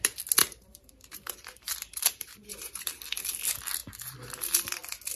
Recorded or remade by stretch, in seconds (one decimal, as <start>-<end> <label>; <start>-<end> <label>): 0.0-0.4 recorded; 0.4-3.0 remade; 3.0-5.1 recorded